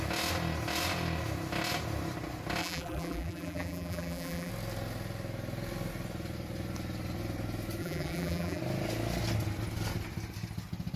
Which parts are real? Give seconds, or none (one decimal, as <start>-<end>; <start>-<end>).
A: 0.0-2.6; 4.5-7.8; 8.6-11.0